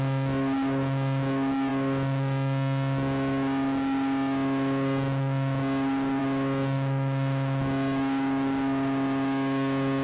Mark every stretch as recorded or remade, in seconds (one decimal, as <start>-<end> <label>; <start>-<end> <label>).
0.0-10.0 recorded